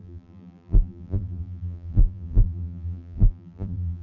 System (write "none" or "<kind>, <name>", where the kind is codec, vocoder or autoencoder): vocoder, BigVGAN v2